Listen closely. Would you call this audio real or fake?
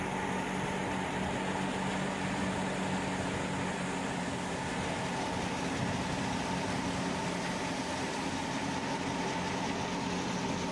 real